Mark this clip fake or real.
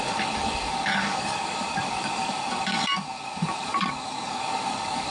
fake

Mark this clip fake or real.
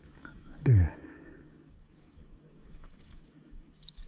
fake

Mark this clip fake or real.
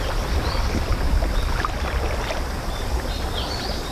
real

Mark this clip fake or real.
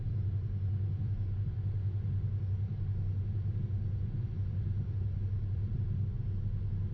real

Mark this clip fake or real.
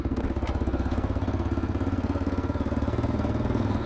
fake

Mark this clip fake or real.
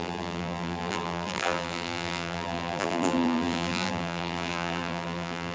fake